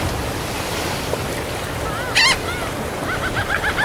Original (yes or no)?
yes